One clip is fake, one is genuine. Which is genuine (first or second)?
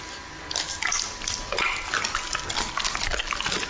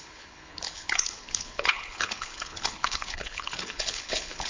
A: first